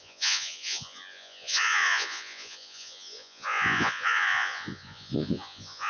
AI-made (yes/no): yes